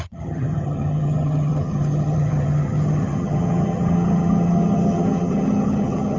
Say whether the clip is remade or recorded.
remade